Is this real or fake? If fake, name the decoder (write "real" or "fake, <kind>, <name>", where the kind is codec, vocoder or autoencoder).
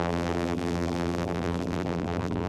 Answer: fake, vocoder, BigVGAN v2